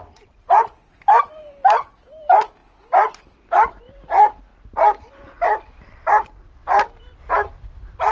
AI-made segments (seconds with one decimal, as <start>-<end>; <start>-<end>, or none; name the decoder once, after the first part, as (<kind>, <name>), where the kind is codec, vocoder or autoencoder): 0.0-2.6 (vocoder, BigVGAN v2); 3.4-8.1